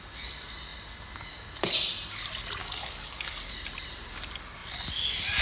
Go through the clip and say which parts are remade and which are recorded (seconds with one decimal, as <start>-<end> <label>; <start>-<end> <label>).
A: 0.0-2.6 recorded; 2.6-3.5 remade; 3.5-5.4 recorded